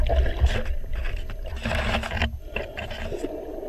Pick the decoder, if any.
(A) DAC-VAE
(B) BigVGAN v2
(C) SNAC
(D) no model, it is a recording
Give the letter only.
D